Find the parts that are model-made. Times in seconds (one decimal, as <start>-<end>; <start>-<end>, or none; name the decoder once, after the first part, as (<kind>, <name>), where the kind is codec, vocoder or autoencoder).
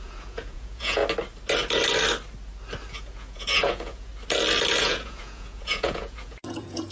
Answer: 0.0-1.0 (vocoder, Vocos); 2.9-4.1; 4.8-6.9